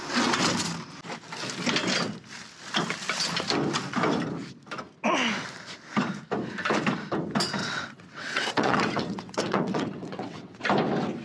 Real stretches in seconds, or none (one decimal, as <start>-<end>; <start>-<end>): 0.0-7.6; 10.6-11.2